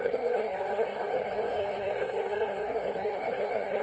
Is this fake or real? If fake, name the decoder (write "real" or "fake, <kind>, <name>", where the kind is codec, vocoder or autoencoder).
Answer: fake, codec, SNAC